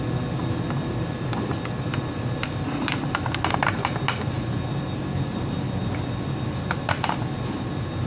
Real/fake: real